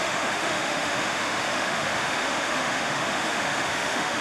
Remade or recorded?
remade